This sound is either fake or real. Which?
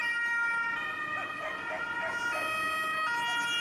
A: real